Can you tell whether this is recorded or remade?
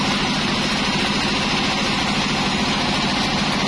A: recorded